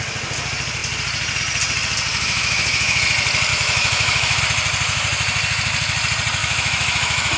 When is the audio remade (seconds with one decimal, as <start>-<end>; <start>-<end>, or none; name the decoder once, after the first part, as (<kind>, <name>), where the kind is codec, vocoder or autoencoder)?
2.1-3.0 (autoencoder, DAC-VAE); 3.5-4.4; 6.4-7.4